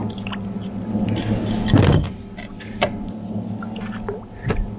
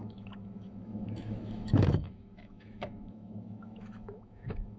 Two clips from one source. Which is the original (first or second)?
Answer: first